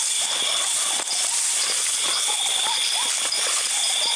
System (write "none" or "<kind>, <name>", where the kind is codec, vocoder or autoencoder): none